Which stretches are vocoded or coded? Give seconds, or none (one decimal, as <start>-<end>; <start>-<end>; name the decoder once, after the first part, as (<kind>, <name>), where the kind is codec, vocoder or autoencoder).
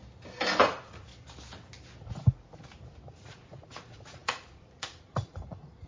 0.6-1.1 (vocoder, Vocos); 3.1-5.9